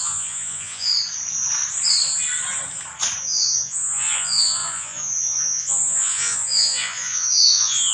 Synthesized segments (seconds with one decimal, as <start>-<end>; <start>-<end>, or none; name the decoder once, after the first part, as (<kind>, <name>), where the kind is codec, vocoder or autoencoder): 0.0-0.9 (vocoder, Vocos); 3.2-7.9